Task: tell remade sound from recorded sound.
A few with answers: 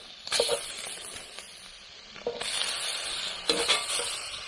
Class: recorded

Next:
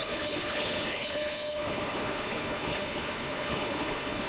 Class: remade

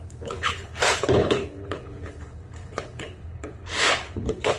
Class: remade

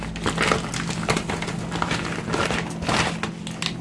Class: recorded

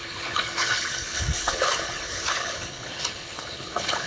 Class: remade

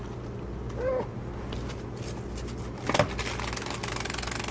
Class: recorded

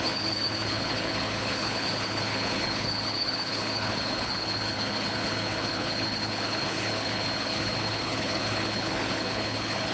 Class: remade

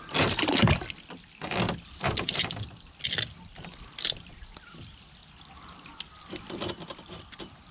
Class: recorded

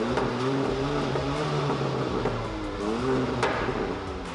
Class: recorded